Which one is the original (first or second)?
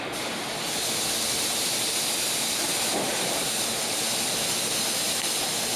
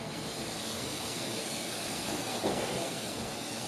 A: first